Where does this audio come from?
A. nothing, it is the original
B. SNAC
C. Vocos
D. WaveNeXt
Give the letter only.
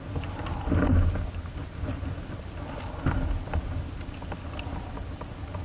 A